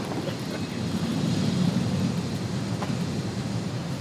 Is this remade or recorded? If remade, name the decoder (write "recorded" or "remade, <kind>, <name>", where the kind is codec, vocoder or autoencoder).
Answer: recorded